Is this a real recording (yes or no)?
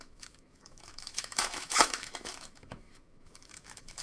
no